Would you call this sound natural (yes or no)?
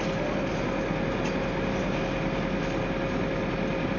yes